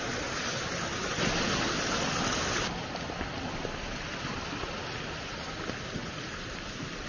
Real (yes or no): yes